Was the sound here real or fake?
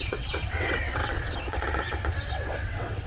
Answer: fake